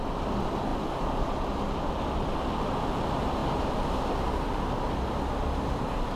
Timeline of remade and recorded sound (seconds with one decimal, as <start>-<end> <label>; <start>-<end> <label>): 0.0-6.2 recorded